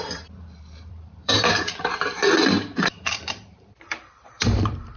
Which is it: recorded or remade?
remade